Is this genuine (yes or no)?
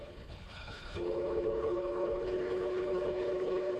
no